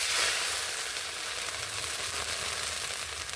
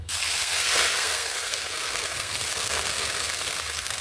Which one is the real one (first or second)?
first